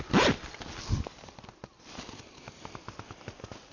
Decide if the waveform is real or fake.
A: real